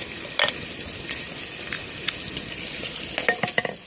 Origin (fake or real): real